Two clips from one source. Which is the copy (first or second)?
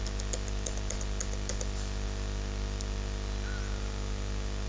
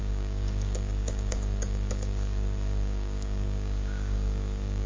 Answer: second